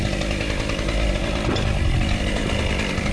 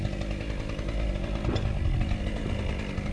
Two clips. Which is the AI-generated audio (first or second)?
first